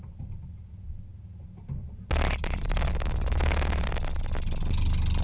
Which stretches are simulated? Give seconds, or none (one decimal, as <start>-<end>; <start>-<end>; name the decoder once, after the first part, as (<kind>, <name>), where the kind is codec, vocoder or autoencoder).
none